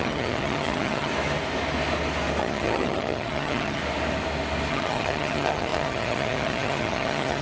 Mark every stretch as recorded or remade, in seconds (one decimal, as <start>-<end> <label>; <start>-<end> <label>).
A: 0.0-1.1 remade; 1.1-2.4 recorded; 2.4-3.8 remade; 3.8-4.7 recorded; 4.7-7.4 remade